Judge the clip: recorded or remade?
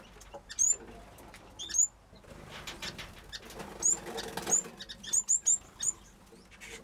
recorded